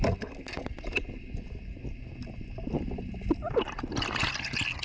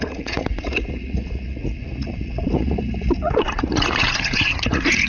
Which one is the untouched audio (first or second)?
first